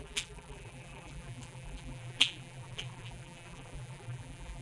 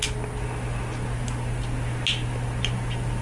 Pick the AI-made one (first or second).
first